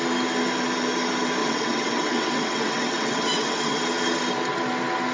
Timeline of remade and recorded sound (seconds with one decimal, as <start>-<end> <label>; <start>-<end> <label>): 0.0-1.4 recorded; 1.4-3.8 remade; 3.8-5.1 recorded